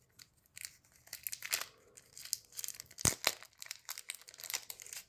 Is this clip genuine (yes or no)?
yes